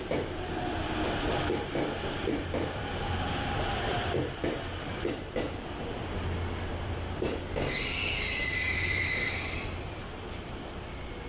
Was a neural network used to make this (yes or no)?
yes